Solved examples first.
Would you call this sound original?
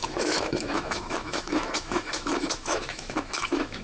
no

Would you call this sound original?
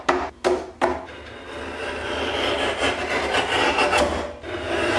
yes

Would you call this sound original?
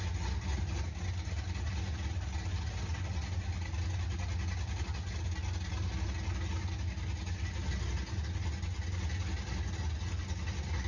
yes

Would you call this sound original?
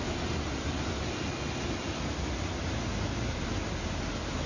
yes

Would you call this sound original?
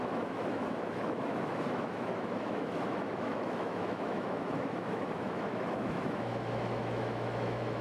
no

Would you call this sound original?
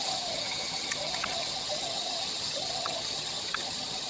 no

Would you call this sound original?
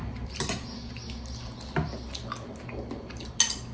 yes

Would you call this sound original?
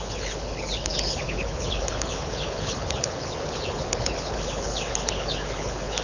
no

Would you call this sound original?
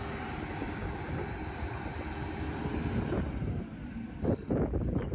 yes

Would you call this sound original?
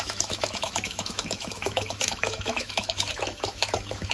no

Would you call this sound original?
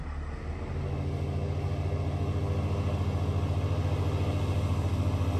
yes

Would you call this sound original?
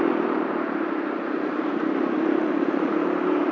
no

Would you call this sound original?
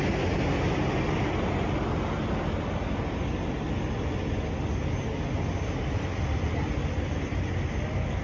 yes